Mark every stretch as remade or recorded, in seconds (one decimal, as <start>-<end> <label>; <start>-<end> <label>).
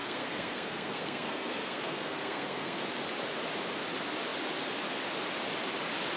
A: 0.0-2.8 remade; 2.8-6.2 recorded